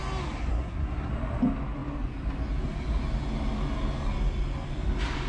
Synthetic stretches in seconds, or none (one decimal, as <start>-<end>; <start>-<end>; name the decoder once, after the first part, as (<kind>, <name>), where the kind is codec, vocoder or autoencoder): 0.5-1.1 (codec, SNAC)